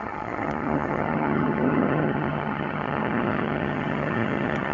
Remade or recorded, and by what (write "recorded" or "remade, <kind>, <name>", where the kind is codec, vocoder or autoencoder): remade, vocoder, HiFi-GAN